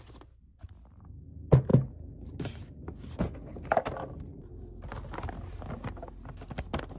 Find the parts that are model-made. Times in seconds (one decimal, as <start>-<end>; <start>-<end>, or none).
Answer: none